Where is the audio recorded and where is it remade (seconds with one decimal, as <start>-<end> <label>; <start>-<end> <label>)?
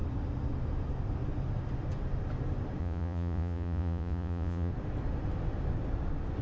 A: 0.0-2.8 recorded; 2.8-4.7 remade; 4.7-6.4 recorded